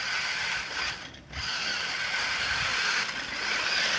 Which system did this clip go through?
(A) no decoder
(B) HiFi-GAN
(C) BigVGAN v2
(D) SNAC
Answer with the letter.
A